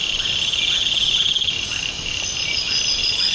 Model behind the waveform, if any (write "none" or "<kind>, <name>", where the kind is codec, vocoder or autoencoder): none